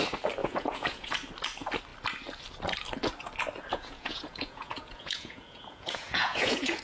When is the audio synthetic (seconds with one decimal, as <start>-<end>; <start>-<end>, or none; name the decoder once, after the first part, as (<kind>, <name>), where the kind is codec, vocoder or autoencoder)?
0.4-1.1 (vocoder, Vocos); 3.7-6.8